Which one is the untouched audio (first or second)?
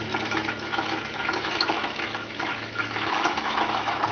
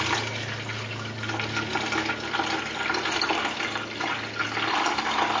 second